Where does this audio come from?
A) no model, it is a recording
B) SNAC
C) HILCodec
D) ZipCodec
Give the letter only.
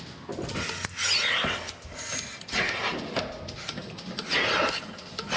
A